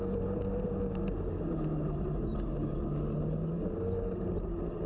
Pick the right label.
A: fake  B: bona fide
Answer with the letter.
B